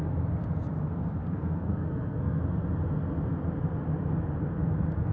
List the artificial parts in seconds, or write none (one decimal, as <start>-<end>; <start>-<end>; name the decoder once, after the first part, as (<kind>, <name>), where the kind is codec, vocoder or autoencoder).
1.2-2.4 (codec, SNAC)